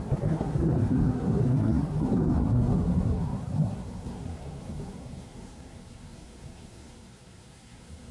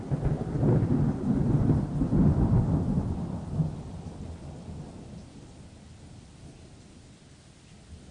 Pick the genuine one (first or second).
second